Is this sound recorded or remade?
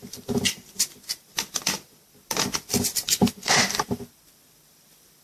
remade